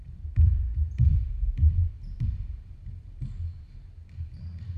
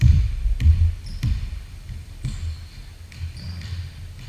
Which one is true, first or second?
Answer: second